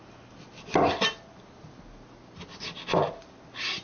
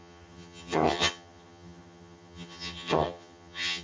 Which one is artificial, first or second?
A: second